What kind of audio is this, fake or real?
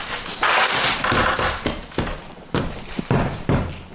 real